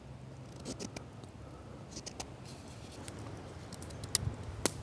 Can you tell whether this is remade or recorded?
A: recorded